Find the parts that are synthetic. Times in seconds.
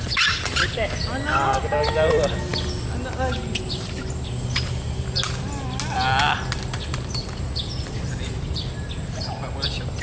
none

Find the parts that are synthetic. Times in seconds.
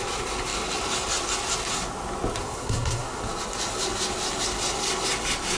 2.4-3.2 (codec, SNAC)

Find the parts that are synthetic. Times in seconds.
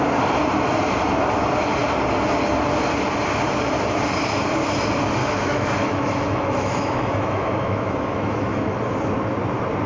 5.2-8.8 (autoencoder, DAC-VAE)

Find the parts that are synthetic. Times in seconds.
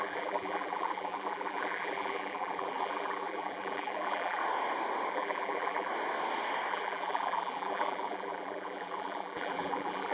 0.0-4.4 (vocoder, BigVGAN v2); 5.1-5.9; 6.7-10.1